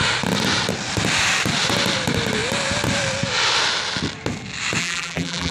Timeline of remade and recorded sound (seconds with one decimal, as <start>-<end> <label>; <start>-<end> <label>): 0.0-4.8 recorded; 4.8-5.5 remade